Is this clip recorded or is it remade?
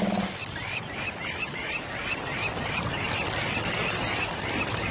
recorded